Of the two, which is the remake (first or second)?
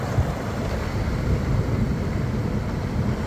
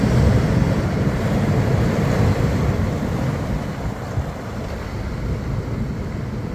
first